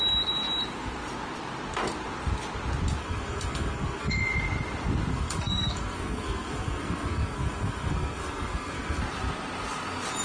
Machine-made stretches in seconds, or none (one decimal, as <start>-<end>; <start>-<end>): 3.0-4.1; 5.1-9.0